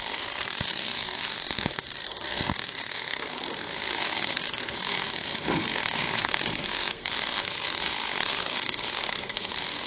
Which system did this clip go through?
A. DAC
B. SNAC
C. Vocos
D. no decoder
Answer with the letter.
B